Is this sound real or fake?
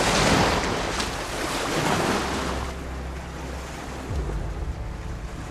real